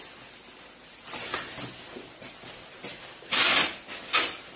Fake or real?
real